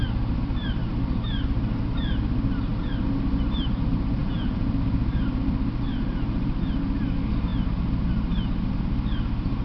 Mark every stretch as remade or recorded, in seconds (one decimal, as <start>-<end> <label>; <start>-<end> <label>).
0.0-4.2 recorded; 4.2-4.7 remade; 4.7-9.6 recorded